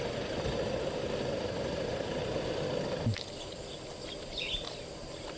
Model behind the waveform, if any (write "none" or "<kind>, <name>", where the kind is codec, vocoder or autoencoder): none